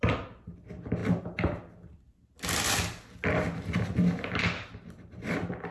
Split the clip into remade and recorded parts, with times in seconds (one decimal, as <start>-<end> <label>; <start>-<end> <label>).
0.0-5.7 recorded